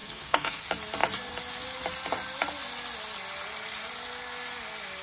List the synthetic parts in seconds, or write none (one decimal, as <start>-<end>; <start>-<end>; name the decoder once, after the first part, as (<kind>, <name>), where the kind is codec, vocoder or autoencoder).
0.0-0.6 (codec, SNAC)